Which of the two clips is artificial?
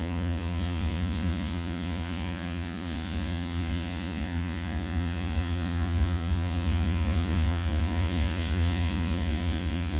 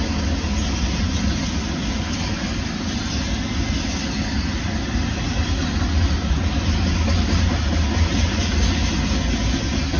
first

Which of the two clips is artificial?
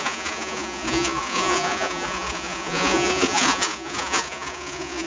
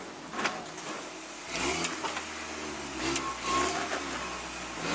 first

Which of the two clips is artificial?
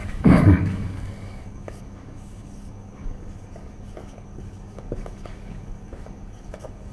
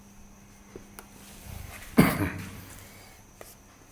first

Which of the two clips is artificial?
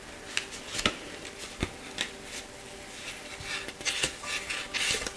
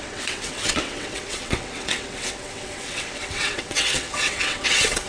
second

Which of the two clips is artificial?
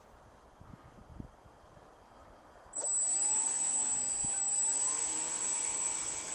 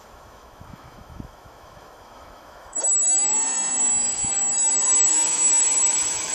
second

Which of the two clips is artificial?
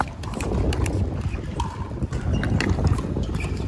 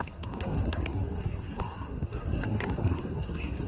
second